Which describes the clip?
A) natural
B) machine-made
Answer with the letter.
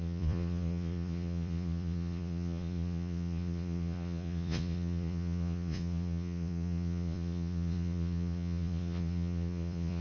B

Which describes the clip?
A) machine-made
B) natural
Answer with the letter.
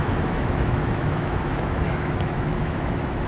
A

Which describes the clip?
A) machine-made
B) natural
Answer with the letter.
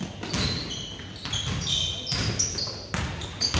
B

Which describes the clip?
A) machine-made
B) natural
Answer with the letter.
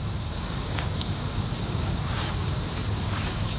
A